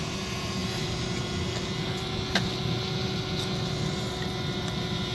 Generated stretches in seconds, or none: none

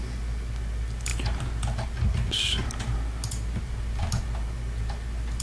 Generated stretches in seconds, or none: none

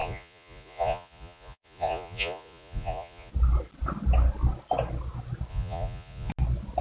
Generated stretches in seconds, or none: 0.0-3.3 (vocoder, Vocos); 5.5-6.3

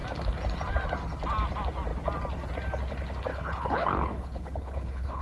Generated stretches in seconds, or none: 3.3-5.2 (codec, HILCodec)